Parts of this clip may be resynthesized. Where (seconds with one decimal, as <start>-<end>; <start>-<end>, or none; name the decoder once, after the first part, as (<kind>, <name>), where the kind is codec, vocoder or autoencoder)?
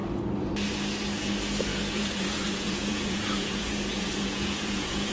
1.7-5.1 (vocoder, Vocos)